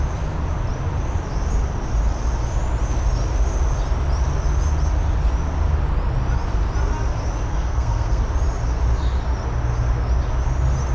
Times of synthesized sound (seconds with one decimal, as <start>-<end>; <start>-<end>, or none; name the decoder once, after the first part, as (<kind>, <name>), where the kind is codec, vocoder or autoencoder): 7.5-8.2 (codec, SNAC)